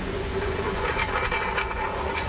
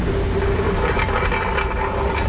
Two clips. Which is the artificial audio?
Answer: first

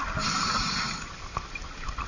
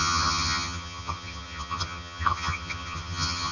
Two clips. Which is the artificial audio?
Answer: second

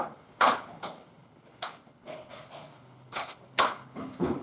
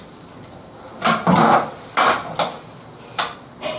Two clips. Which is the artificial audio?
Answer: first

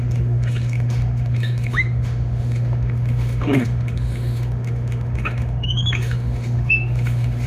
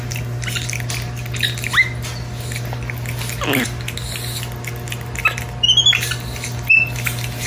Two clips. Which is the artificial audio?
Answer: first